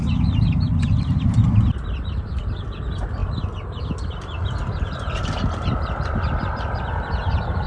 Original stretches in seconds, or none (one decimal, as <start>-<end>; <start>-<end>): 0.0-7.7